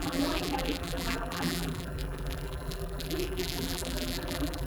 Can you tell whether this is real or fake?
fake